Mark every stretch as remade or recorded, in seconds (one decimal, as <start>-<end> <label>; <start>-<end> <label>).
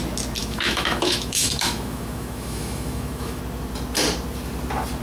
0.0-0.4 recorded; 0.4-3.4 remade; 3.4-5.0 recorded